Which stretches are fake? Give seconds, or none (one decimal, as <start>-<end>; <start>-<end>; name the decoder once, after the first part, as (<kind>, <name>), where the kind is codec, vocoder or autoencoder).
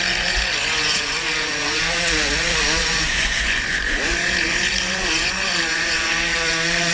0.0-6.9 (vocoder, Vocos)